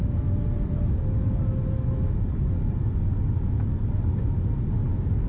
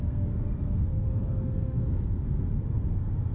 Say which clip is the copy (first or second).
second